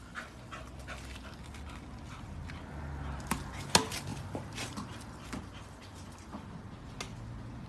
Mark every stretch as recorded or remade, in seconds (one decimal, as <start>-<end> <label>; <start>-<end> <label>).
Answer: 0.0-4.1 recorded; 4.1-6.6 remade; 6.6-7.7 recorded

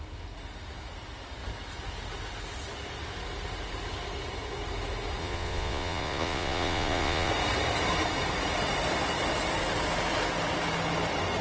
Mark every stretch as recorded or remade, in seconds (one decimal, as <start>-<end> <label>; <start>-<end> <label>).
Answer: 0.0-5.2 recorded; 5.2-7.3 remade; 7.3-11.4 recorded